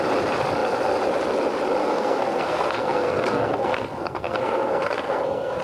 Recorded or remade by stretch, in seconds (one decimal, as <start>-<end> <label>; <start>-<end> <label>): 0.0-1.8 recorded; 1.8-5.6 remade